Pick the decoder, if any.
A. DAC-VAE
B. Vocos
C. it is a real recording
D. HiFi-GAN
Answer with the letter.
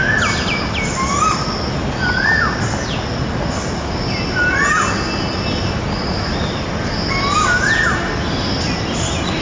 C